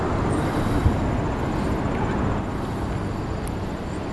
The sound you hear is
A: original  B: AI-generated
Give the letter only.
A